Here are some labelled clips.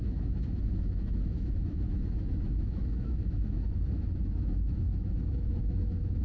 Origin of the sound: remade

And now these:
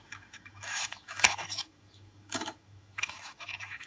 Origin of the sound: remade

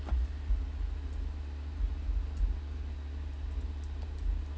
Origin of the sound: recorded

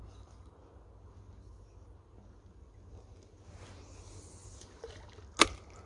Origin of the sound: recorded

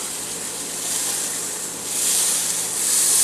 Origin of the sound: recorded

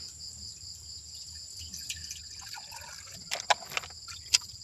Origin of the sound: recorded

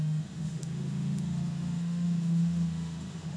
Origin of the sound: remade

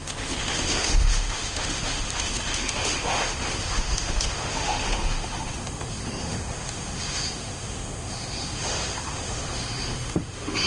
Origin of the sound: remade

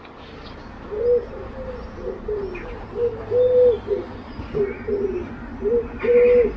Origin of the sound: recorded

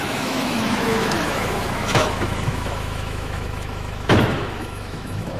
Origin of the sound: remade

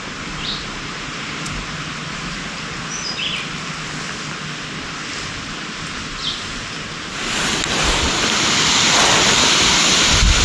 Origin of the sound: recorded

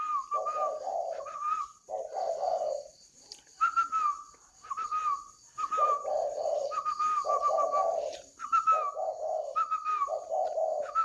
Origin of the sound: recorded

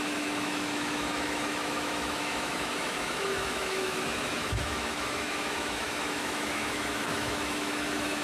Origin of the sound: remade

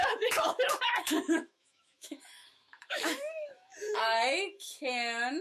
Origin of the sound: remade